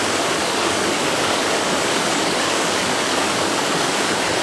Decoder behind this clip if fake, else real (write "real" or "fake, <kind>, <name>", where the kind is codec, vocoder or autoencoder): fake, codec, DAC